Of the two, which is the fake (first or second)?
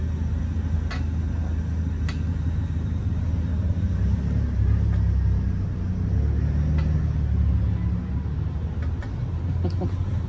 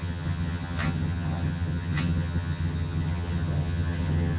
second